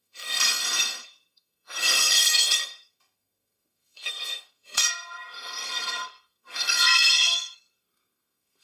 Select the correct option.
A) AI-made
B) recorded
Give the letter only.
A